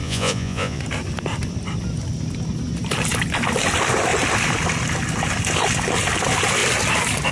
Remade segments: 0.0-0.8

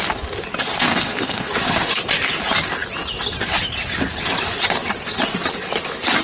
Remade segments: 0.9-1.5

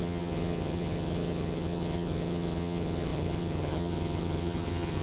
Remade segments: 0.0-5.0

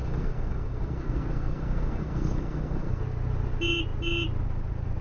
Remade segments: 0.0-3.0

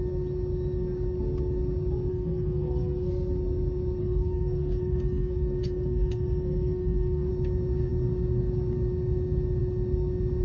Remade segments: 2.1-3.1; 4.0-7.3